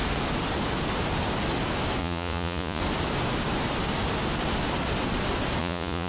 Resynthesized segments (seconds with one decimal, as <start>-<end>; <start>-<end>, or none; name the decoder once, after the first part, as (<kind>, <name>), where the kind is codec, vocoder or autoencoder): 2.0-2.8 (vocoder, Vocos); 5.6-6.1